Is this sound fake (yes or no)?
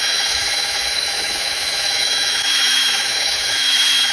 yes